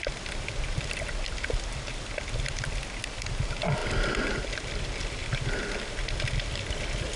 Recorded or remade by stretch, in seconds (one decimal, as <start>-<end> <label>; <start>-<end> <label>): 0.0-7.2 recorded